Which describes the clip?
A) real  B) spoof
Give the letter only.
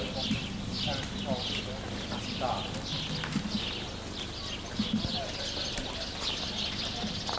A